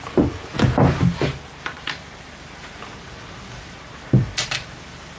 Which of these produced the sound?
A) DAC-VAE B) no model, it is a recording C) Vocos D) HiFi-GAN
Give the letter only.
B